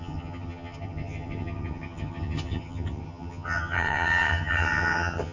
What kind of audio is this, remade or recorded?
remade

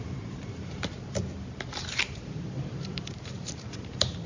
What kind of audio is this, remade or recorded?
remade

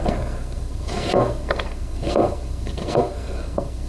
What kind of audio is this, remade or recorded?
remade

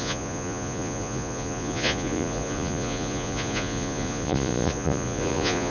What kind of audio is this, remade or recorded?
remade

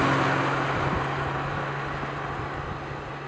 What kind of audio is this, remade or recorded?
recorded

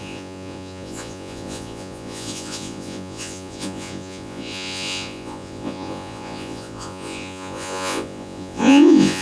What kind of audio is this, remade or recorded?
remade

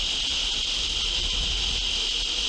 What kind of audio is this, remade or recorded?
recorded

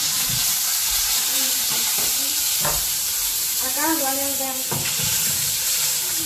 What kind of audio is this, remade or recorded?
remade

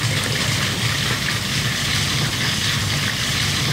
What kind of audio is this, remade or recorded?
recorded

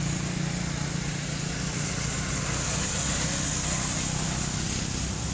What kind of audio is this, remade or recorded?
recorded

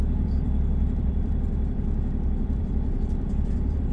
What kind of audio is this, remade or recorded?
remade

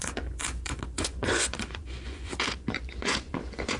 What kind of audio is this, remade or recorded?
remade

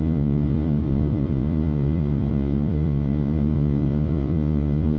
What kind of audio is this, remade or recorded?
remade